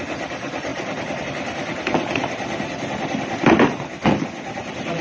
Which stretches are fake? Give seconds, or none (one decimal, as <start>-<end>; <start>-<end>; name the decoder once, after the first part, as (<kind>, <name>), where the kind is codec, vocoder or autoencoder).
0.7-1.2 (vocoder, BigVGAN v2)